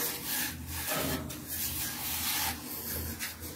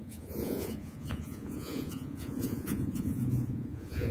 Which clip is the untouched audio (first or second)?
first